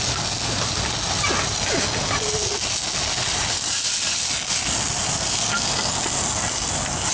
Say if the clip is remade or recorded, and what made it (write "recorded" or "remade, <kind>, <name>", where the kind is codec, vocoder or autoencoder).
recorded